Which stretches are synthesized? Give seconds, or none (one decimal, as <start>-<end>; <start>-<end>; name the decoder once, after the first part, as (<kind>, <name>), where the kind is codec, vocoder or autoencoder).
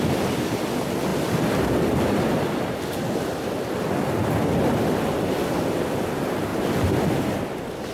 none